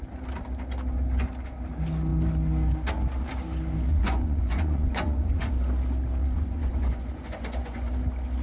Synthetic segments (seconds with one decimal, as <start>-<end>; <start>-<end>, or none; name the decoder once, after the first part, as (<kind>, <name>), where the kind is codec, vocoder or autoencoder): 3.9-5.5 (vocoder, Vocos); 6.2-7.9

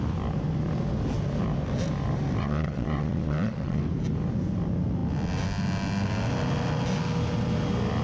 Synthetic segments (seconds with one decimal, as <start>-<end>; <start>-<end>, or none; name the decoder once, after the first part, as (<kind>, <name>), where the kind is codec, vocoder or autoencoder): 2.4-3.8 (vocoder, Vocos)